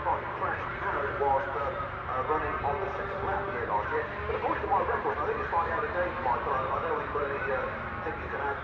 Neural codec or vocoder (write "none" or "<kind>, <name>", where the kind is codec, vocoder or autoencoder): vocoder, BigVGAN v2